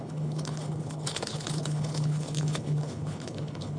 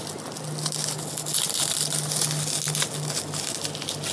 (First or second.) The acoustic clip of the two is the second